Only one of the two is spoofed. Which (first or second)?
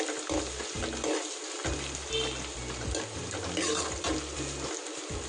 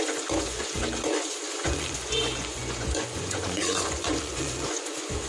second